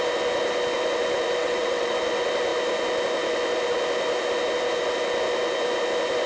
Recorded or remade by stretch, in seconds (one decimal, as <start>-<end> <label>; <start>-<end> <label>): 0.0-1.4 recorded; 1.4-1.9 remade; 1.9-6.3 recorded